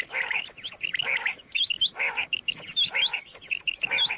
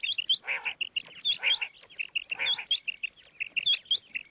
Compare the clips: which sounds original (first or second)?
second